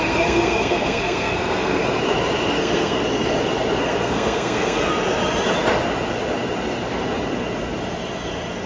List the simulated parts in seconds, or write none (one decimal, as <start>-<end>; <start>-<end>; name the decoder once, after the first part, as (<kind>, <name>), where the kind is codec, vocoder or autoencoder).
0.0-1.8 (codec, SNAC); 2.6-3.0; 3.8-4.9